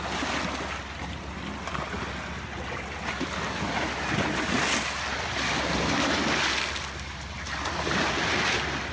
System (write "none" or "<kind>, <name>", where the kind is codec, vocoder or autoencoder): none